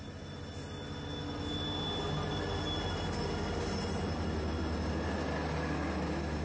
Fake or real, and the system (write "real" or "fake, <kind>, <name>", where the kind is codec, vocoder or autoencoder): real